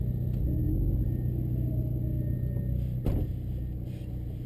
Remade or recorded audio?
recorded